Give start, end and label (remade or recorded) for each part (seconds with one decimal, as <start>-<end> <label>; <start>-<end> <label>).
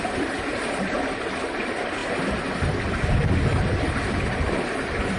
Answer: 0.0-5.2 recorded